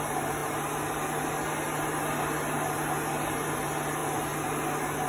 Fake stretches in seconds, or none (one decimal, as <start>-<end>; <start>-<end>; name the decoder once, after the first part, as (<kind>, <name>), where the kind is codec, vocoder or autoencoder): none